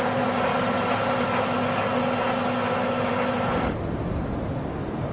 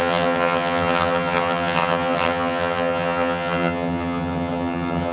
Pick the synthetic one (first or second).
second